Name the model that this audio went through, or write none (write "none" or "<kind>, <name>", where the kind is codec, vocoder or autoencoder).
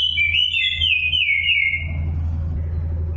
none